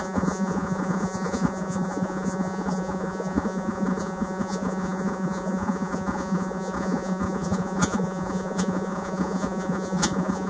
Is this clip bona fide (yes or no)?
no